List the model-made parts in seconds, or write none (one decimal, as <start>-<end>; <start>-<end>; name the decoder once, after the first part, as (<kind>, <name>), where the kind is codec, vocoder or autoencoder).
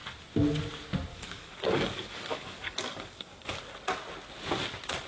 1.1-3.6 (codec, DAC)